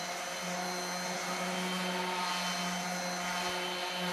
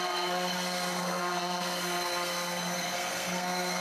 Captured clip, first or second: first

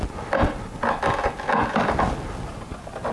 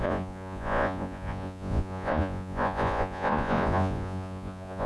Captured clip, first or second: first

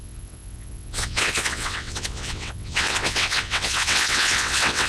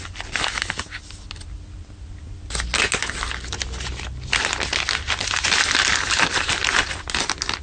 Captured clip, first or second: second